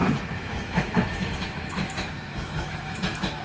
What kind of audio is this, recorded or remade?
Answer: remade